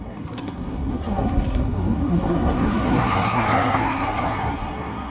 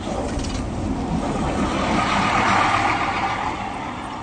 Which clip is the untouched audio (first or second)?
second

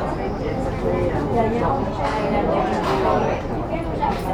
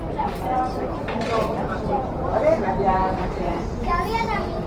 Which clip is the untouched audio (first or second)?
first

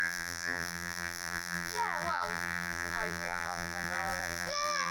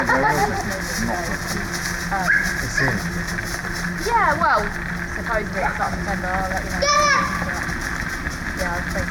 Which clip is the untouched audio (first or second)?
second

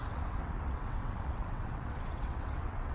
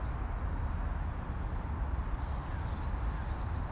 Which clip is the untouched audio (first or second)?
second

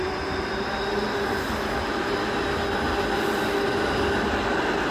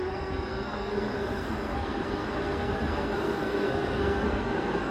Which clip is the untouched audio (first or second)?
first